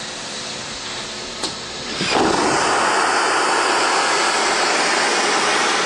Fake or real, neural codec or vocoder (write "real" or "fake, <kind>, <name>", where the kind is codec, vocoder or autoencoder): real